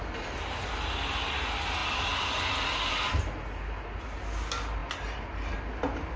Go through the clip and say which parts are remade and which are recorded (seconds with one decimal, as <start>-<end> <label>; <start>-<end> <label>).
0.0-6.2 recorded